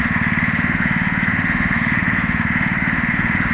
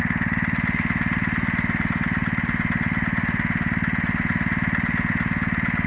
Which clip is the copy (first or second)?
first